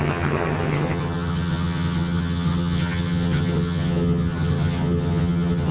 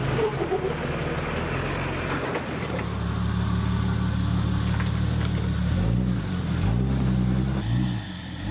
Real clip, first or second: second